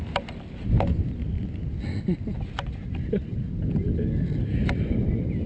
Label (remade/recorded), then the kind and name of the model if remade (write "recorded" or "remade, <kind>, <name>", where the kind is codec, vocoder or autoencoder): recorded